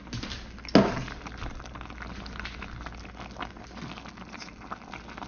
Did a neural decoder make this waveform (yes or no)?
no